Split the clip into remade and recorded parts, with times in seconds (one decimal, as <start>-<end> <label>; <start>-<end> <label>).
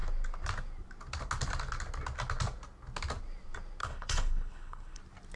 0.0-3.8 recorded; 3.8-5.0 remade; 5.0-5.4 recorded